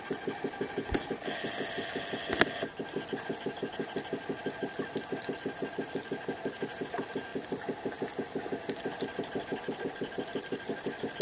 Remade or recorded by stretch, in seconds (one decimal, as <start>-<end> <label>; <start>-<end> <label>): 0.0-11.2 recorded